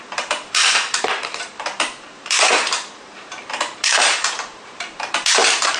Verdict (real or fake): fake